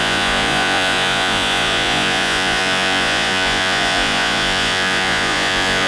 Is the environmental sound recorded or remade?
remade